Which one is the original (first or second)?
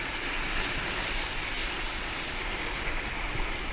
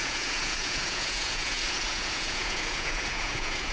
first